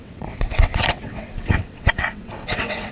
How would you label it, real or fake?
fake